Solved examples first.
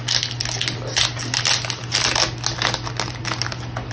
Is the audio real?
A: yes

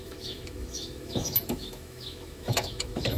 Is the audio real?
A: no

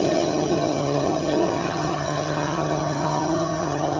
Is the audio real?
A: no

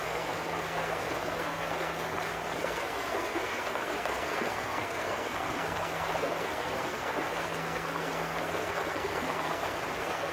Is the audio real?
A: no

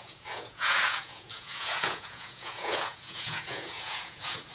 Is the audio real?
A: no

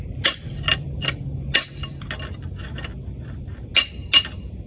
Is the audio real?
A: yes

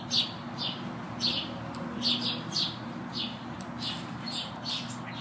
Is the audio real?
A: yes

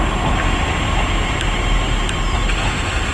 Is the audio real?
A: yes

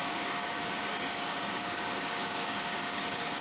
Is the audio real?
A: no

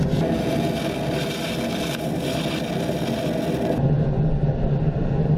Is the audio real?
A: yes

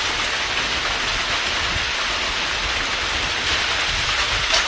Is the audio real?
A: yes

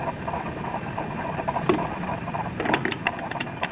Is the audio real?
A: no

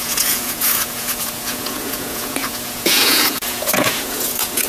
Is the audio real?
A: no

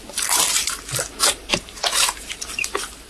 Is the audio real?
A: no